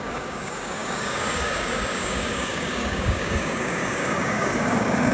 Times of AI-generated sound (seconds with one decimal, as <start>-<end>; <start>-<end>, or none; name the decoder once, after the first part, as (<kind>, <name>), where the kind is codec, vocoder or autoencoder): 0.0-5.1 (codec, DAC)